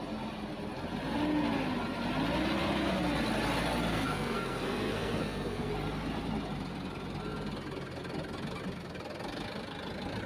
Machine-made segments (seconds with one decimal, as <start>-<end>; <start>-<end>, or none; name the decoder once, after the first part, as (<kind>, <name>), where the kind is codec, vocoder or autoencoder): 3.9-5.7 (codec, SNAC)